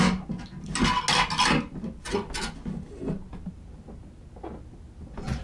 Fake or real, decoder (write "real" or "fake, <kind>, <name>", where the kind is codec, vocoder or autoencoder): real